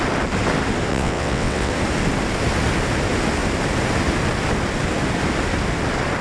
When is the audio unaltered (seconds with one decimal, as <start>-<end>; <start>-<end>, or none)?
0.0-0.9; 1.7-6.2